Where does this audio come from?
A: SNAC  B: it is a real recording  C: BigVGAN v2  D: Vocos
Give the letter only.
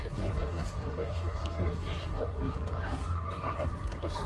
A